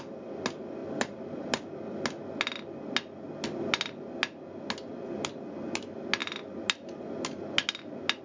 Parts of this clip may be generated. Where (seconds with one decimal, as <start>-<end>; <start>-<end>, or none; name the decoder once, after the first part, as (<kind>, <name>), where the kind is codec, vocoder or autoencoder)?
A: none